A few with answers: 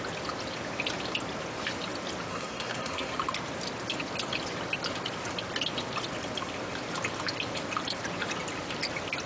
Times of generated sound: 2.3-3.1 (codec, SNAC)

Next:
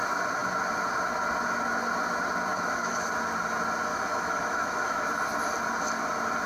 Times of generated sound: 2.5-3.1 (autoencoder, DAC-VAE); 3.9-5.1

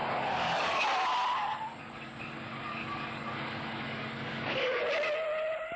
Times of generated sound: 0.0-0.8 (codec, DAC); 1.8-4.8

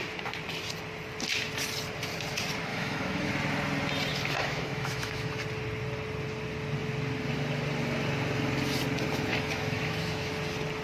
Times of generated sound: 2.7-3.3 (autoencoder, DAC-VAE); 4.1-5.3; 9.3-10.3

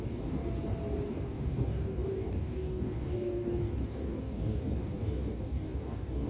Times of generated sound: 0.0-0.4 (codec, DAC); 1.1-6.3

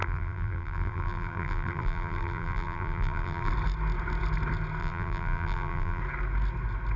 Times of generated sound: 0.0-3.5 (vocoder, BigVGAN v2); 4.8-6.0

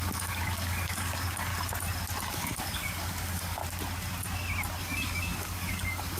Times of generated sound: 0.0-1.5 (codec, DAC); 2.3-3.6; 4.8-6.2